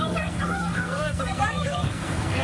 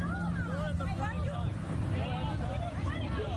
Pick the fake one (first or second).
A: first